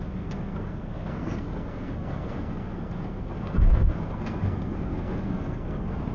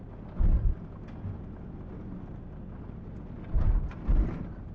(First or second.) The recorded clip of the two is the second